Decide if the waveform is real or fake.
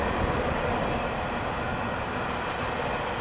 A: real